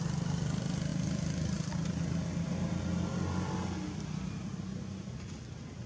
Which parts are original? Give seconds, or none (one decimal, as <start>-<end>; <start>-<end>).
0.0-5.9